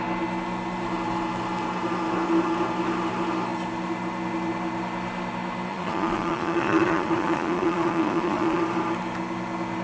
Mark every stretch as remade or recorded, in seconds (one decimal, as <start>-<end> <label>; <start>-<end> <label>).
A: 0.0-5.7 recorded; 5.7-8.6 remade; 8.6-9.8 recorded